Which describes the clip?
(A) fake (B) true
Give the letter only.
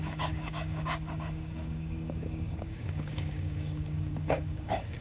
A